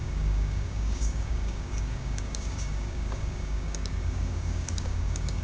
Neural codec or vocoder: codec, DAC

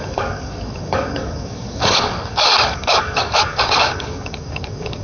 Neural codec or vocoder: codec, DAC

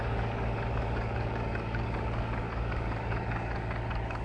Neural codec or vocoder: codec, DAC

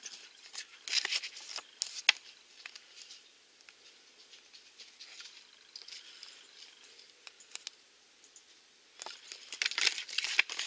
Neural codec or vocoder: none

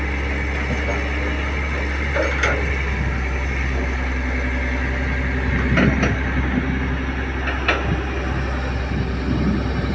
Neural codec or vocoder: none